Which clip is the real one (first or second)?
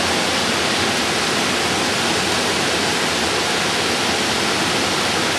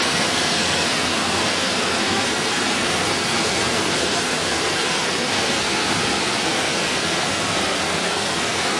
first